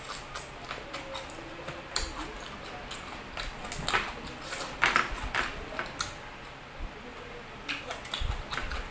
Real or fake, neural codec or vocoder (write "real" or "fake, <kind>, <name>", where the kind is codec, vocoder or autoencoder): real